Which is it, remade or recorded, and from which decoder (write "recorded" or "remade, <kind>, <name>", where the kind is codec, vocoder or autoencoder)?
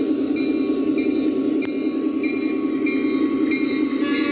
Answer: recorded